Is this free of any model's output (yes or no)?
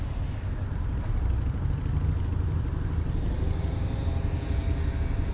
yes